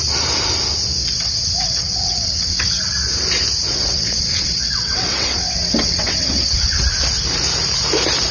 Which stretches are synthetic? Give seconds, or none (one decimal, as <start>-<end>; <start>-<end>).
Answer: 1.0-2.8; 3.7-6.8

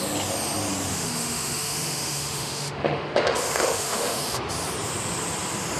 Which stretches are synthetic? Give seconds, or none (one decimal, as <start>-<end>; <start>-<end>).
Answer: 0.9-4.4